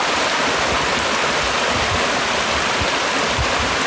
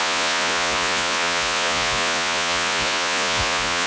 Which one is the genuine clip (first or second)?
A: first